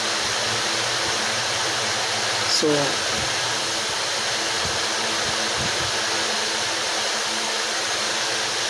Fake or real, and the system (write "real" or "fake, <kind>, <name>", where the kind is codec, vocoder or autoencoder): real